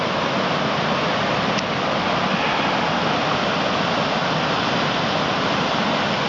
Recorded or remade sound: recorded